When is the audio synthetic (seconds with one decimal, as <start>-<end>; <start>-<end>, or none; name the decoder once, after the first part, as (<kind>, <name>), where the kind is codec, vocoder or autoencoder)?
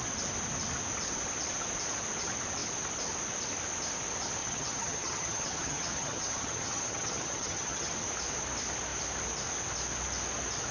4.4-7.9 (vocoder, HiFi-GAN)